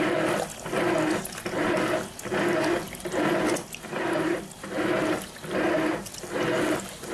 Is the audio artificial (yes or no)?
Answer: no